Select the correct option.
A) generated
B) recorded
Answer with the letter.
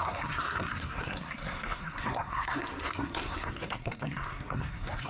A